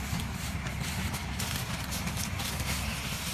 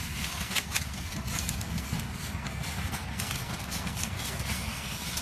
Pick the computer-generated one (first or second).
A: second